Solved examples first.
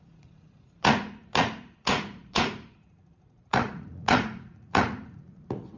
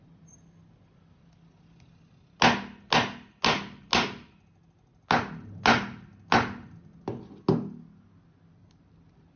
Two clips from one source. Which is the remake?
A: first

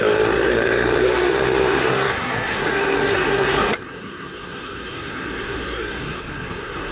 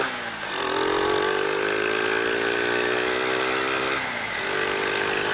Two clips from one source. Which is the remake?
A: first